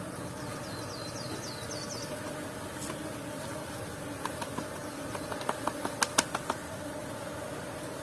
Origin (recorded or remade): recorded